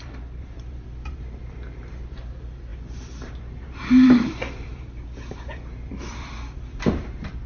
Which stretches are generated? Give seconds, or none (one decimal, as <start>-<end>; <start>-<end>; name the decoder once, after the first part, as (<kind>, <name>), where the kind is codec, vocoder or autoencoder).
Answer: 0.0-7.5 (vocoder, BigVGAN v2)